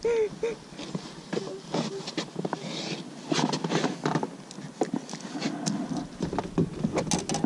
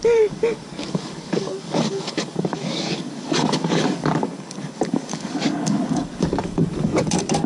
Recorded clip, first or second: first